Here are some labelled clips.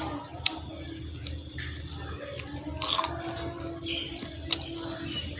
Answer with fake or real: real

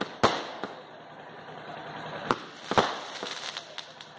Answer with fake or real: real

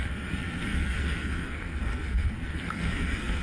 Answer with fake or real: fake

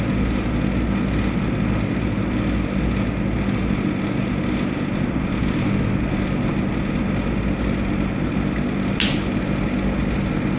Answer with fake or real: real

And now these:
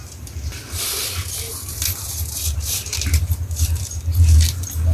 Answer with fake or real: fake